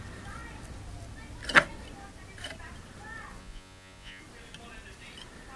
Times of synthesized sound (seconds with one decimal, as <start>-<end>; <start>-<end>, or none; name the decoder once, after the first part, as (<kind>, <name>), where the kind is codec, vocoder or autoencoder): 3.4-4.2 (vocoder, Vocos)